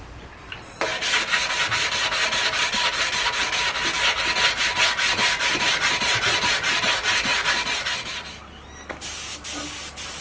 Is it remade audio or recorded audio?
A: recorded